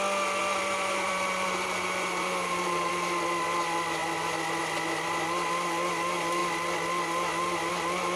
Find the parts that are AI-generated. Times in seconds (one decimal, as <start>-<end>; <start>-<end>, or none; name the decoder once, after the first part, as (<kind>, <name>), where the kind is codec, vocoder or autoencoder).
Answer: 0.4-2.9 (vocoder, BigVGAN v2)